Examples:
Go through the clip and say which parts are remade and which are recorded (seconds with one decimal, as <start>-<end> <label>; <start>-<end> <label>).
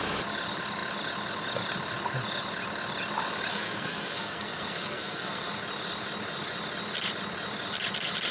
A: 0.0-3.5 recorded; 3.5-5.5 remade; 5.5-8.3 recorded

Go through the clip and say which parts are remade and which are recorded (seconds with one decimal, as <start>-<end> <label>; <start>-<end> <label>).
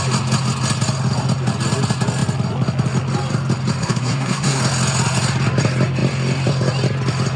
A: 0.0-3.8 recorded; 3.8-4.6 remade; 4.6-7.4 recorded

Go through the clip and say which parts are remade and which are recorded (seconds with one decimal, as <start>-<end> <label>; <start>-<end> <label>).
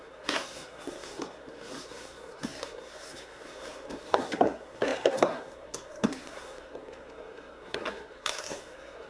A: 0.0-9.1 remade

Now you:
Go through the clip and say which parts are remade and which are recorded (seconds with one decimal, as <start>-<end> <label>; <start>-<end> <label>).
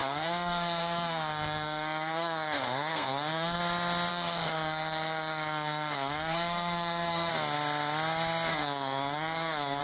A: 0.0-3.6 remade; 3.6-4.1 recorded; 4.1-7.3 remade; 7.3-8.5 recorded; 8.5-9.8 remade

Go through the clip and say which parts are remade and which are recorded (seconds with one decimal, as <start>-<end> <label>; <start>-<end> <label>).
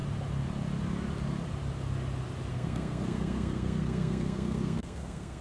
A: 0.0-2.5 recorded; 2.5-5.4 remade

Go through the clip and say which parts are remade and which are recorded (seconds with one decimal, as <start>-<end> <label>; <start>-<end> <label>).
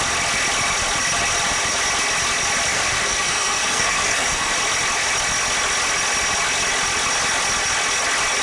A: 0.0-2.7 recorded; 2.7-4.5 remade; 4.5-8.4 recorded